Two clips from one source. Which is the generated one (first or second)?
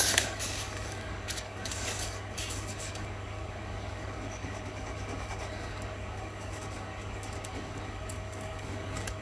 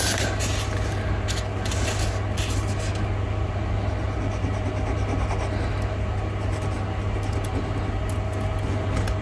first